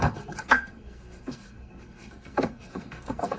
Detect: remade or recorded remade